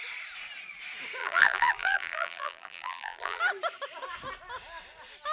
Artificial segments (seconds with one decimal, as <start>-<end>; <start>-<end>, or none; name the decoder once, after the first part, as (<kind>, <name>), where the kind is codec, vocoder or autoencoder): 1.2-3.4 (vocoder, BigVGAN v2)